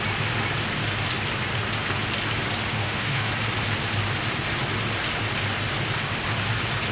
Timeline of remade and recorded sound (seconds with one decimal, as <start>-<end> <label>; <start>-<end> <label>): 0.0-2.8 recorded; 2.8-3.3 remade; 3.3-6.9 recorded